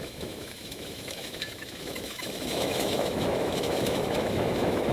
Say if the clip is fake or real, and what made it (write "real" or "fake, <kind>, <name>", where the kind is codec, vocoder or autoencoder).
fake, autoencoder, DAC-VAE